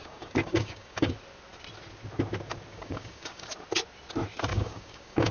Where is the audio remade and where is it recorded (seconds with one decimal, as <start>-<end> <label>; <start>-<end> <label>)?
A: 0.0-1.1 remade; 1.1-2.7 recorded; 2.7-3.5 remade; 3.5-4.5 recorded; 4.5-5.3 remade